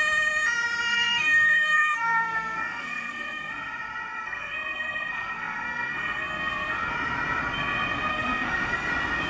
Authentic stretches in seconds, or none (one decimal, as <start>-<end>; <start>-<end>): 0.0-0.9; 3.5-4.1; 6.9-8.1; 8.9-9.3